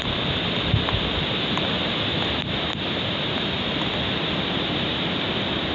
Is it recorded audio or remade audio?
recorded